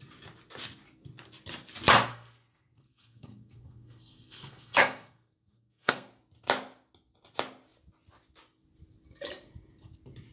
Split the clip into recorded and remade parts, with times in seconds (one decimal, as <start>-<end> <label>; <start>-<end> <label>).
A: 0.0-2.1 recorded; 2.1-6.1 remade; 6.1-10.3 recorded